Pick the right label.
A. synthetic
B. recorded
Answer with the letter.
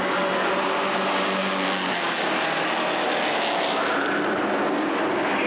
B